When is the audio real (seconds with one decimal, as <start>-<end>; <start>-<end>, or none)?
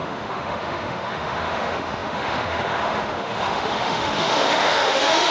none